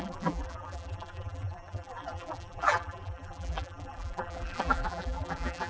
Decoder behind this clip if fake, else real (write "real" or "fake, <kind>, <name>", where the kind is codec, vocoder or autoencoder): fake, vocoder, BigVGAN v2